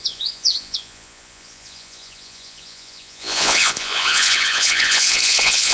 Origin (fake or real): fake